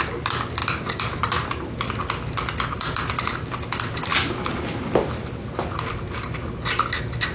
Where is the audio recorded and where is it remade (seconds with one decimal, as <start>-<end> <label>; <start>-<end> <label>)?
0.0-7.3 recorded